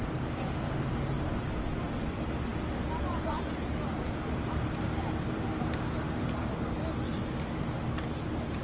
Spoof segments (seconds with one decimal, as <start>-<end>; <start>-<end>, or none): 0.0-8.6

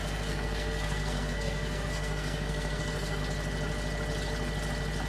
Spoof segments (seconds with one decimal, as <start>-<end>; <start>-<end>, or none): 0.0-3.2